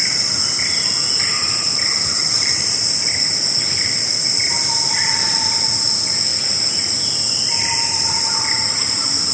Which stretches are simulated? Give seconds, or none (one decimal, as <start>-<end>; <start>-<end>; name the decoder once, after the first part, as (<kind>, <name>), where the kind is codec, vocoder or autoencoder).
1.4-4.5 (vocoder, BigVGAN v2)